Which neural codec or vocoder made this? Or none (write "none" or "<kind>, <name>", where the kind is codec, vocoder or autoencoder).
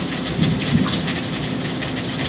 none